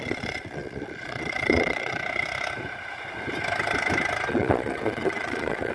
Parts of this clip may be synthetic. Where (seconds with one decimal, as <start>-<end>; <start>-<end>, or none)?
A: 0.0-2.0; 4.3-5.7